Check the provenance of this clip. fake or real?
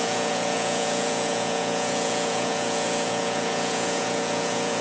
fake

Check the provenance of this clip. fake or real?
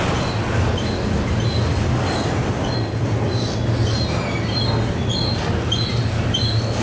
real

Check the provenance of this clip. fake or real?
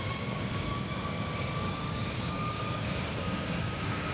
fake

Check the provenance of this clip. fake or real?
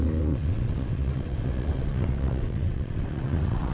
fake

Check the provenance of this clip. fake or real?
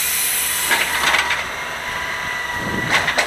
fake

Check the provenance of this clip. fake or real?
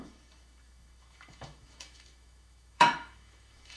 fake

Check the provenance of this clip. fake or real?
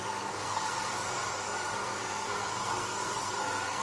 fake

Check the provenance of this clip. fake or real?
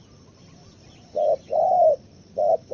real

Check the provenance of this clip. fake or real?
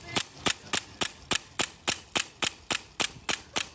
real